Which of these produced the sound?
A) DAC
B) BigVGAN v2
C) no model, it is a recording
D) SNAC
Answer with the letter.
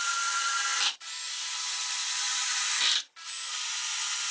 C